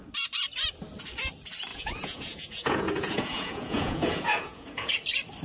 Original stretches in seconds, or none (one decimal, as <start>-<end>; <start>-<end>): 0.0-1.7; 4.9-5.4